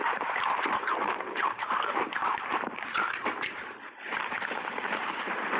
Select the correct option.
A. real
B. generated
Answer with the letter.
B